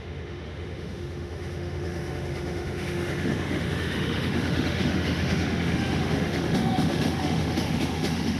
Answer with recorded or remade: remade